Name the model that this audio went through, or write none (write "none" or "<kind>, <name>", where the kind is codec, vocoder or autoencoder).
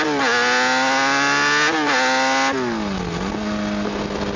none